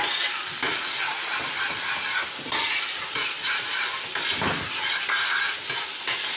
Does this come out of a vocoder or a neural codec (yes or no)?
no